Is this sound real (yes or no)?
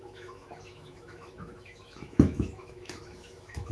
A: no